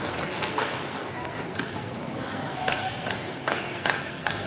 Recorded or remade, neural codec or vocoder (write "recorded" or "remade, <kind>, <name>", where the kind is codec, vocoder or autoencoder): remade, codec, SNAC